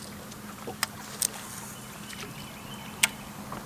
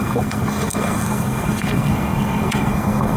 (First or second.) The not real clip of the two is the second